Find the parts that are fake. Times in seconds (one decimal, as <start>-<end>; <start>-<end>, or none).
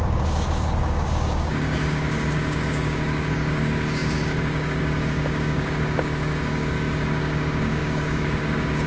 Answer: 0.0-8.9